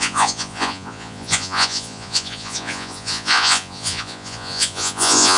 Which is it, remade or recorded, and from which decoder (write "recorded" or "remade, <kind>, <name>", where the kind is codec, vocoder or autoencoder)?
remade, vocoder, Vocos